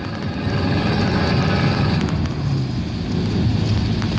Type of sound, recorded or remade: recorded